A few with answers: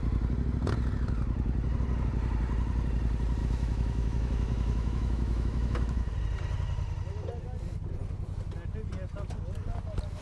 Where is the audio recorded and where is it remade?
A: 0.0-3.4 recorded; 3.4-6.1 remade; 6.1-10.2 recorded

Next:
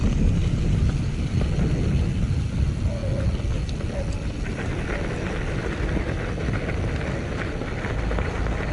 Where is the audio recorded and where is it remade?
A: 0.0-8.7 recorded

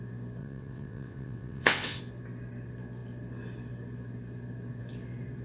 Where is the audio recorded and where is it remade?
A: 0.0-0.4 recorded; 0.4-2.0 remade; 2.0-5.4 recorded

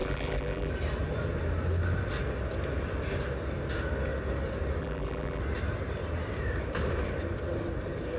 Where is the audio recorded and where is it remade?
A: 0.0-0.7 remade; 0.7-4.8 recorded; 4.8-5.4 remade; 5.4-8.2 recorded

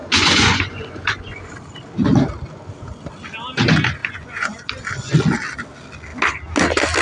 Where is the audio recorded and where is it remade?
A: 0.0-1.5 remade; 1.5-4.0 recorded; 4.0-4.7 remade; 4.7-7.0 recorded

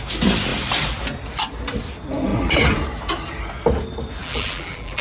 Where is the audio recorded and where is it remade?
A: 0.0-4.2 recorded; 4.2-5.0 remade

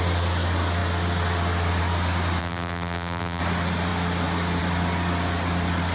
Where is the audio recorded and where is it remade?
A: 0.0-2.4 recorded; 2.4-3.4 remade; 3.4-5.9 recorded